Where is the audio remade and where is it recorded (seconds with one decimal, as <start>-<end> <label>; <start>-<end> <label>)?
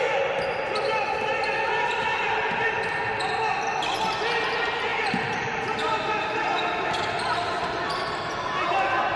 0.0-9.2 recorded